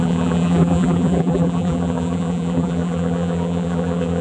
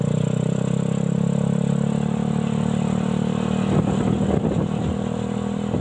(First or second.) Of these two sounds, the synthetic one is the first